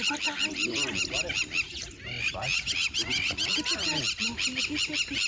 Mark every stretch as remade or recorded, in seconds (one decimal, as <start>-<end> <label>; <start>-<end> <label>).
0.0-5.3 recorded